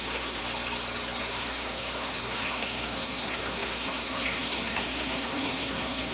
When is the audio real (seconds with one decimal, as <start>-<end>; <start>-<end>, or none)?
0.4-1.2

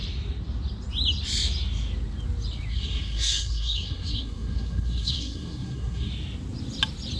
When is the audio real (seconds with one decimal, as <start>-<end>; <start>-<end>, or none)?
0.0-2.7; 6.1-7.2

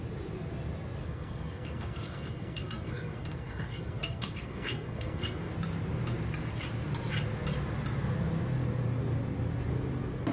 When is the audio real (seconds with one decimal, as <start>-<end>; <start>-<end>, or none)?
0.0-1.0; 5.5-10.3